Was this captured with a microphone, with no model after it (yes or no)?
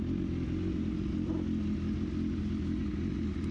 yes